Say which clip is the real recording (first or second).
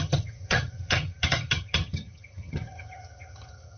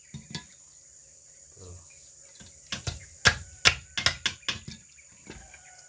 second